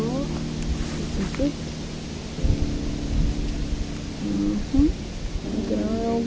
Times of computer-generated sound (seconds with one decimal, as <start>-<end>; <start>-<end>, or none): none